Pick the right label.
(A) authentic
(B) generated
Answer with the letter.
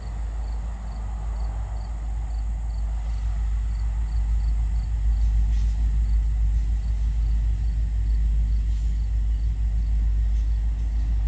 A